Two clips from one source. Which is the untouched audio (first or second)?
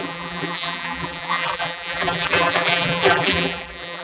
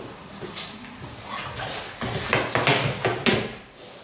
second